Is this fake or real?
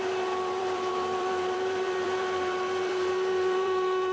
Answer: fake